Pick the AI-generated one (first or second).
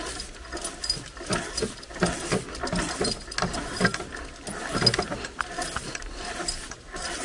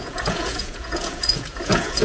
second